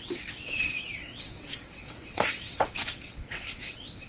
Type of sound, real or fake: fake